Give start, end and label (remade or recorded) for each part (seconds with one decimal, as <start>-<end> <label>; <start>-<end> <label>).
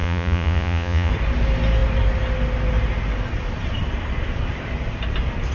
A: 0.0-1.1 remade; 1.1-5.5 recorded